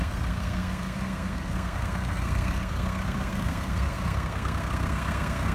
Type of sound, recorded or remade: remade